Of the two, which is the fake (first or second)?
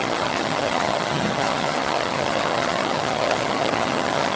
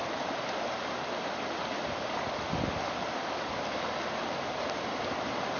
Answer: first